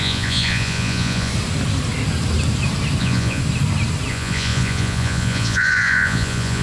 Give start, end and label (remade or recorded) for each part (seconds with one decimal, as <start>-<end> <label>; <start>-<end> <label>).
0.0-1.3 remade; 1.3-3.0 recorded; 3.0-3.4 remade; 3.4-4.1 recorded; 4.1-6.6 remade